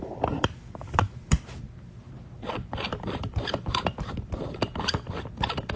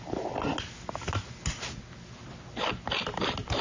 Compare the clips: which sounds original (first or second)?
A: second